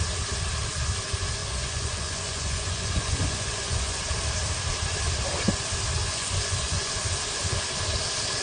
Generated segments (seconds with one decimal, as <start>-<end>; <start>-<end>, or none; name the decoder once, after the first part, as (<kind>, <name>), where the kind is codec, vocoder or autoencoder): 1.4-4.0 (vocoder, Vocos); 6.0-6.9